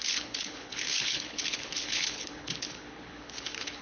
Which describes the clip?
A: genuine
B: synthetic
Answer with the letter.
B